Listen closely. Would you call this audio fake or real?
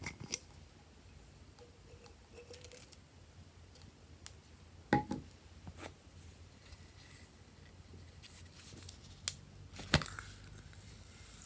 real